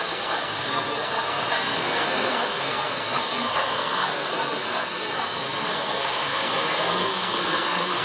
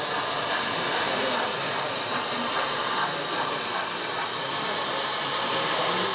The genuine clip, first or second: second